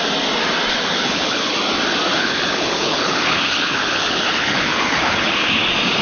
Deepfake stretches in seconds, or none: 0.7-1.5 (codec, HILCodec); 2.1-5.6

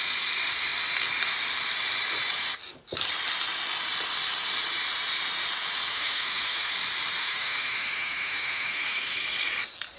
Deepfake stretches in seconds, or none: 5.9-6.7 (autoencoder, DAC-VAE); 7.2-9.2